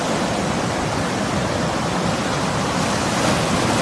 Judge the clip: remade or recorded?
recorded